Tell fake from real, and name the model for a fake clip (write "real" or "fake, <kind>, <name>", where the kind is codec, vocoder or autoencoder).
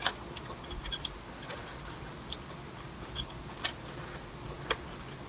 real